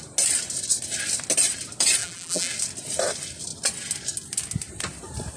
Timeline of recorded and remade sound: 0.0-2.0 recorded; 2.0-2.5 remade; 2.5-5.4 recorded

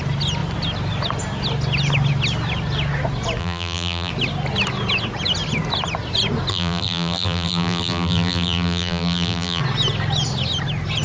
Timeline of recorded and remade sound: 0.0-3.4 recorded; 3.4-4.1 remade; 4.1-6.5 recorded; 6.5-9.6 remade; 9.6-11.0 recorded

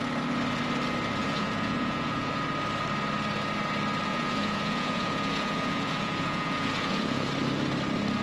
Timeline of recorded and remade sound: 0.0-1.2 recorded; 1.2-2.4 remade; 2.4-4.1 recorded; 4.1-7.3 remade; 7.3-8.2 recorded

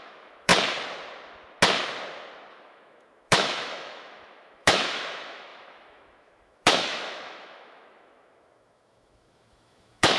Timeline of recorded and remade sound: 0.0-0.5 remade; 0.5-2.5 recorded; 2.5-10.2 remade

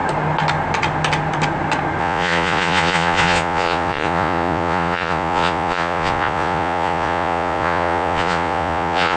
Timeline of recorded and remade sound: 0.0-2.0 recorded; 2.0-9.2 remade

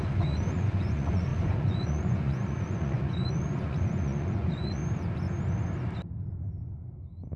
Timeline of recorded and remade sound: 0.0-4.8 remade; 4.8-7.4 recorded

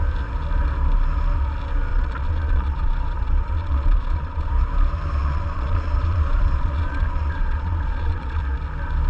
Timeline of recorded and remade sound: 0.0-1.9 recorded; 1.9-4.5 remade; 4.5-5.2 recorded; 5.2-8.4 remade; 8.4-9.1 recorded